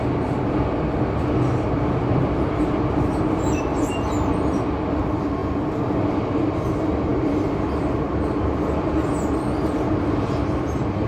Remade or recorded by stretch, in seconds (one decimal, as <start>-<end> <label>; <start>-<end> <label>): 0.0-11.1 recorded